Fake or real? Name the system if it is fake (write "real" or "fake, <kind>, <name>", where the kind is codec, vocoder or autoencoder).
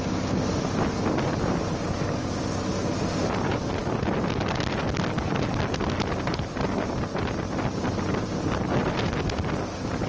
real